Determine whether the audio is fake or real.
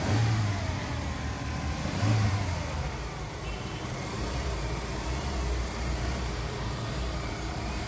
fake